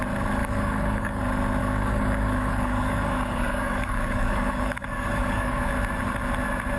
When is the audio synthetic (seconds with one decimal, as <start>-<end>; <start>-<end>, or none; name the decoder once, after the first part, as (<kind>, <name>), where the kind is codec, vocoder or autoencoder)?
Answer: 0.4-1.2 (codec, DAC); 1.6-5.7